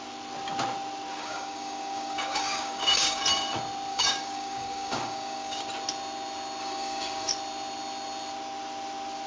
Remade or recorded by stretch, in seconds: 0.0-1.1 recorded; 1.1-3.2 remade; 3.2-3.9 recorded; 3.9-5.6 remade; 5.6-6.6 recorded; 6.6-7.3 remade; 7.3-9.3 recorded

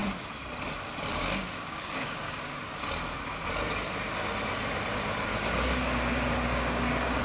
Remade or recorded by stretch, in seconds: 0.0-1.1 recorded; 1.1-2.8 remade; 2.8-5.3 recorded; 5.3-7.2 remade

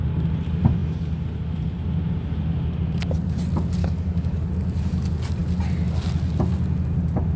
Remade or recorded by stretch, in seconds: 0.0-3.8 recorded; 3.8-4.5 remade; 4.5-7.4 recorded

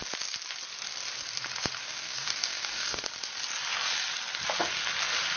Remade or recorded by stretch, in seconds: 0.0-1.8 recorded; 1.8-3.1 remade; 3.1-5.4 recorded

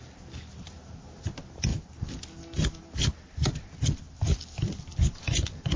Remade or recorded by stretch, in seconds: 0.0-5.8 recorded

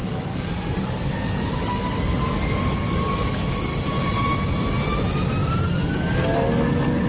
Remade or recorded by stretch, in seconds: 0.0-3.7 remade; 3.7-5.8 recorded; 5.8-7.1 remade

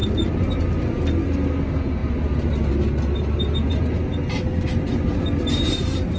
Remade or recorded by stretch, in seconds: 0.0-6.2 recorded

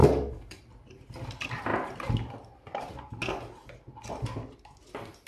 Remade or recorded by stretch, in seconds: 0.0-0.6 remade; 0.6-5.3 recorded